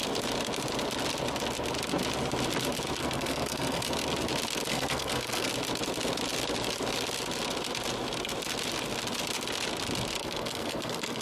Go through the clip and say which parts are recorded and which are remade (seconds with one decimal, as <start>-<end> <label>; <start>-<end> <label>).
0.0-3.0 recorded; 3.0-3.8 remade; 3.8-4.7 recorded; 4.7-5.5 remade; 5.5-10.2 recorded; 10.2-11.2 remade